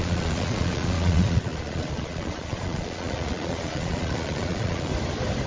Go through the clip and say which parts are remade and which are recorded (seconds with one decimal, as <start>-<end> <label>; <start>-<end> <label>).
0.0-4.9 remade; 4.9-5.5 recorded